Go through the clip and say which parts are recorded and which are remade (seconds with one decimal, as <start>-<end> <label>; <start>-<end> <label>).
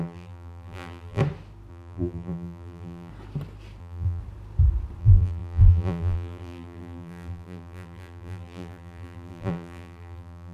0.0-1.2 remade; 1.2-1.7 recorded; 1.7-3.1 remade; 3.1-3.8 recorded; 3.8-4.2 remade; 4.2-5.0 recorded; 5.0-10.5 remade